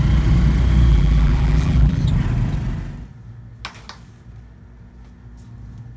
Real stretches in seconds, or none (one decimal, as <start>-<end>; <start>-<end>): 0.0-0.9; 2.0-6.0